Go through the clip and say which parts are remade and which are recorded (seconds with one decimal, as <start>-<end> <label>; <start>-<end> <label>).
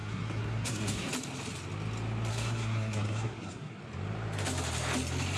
0.0-1.1 remade; 1.1-2.3 recorded; 2.3-3.8 remade; 3.8-5.4 recorded